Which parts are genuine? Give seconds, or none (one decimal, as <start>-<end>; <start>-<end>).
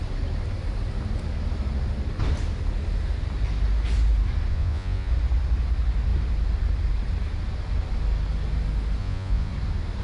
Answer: 0.0-4.5; 5.1-9.0; 9.5-10.0